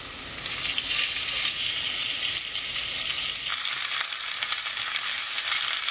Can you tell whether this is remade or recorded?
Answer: recorded